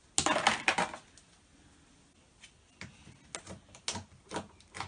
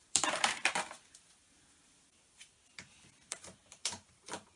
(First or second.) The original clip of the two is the first